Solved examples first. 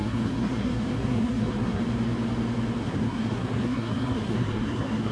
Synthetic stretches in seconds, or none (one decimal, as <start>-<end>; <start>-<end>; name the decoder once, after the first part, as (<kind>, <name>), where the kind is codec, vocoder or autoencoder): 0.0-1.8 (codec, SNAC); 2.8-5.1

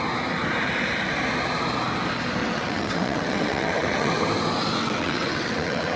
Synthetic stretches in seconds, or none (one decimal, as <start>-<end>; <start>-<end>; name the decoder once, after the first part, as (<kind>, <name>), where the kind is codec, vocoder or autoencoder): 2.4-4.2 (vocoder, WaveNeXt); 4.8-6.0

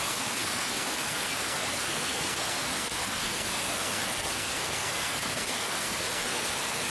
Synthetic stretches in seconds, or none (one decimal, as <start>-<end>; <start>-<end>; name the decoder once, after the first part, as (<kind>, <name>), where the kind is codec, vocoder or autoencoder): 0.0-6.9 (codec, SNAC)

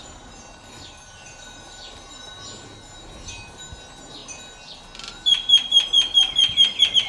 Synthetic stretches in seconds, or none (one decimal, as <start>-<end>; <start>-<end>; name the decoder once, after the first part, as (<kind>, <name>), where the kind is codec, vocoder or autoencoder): none

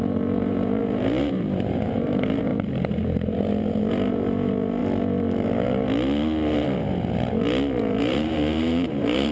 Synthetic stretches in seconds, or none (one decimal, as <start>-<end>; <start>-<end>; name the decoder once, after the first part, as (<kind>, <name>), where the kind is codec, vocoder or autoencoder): 0.0-4.8 (vocoder, BigVGAN v2); 7.8-9.3

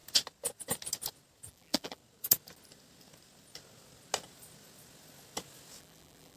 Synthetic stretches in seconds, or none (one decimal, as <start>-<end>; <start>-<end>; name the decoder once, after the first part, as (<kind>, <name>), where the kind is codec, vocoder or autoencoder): 1.5-2.0 (vocoder, BigVGAN v2); 5.8-6.4